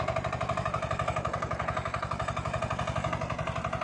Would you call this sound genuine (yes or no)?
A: yes